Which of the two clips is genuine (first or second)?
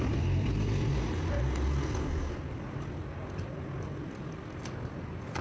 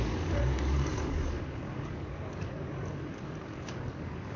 first